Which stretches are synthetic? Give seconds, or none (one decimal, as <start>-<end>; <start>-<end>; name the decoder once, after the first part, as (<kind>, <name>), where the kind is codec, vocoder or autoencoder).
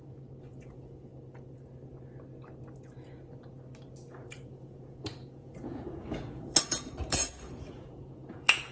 0.0-1.1 (vocoder, Vocos); 4.3-8.7